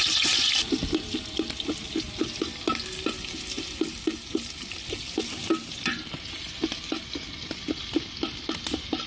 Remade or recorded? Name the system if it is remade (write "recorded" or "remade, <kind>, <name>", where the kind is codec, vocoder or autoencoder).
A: recorded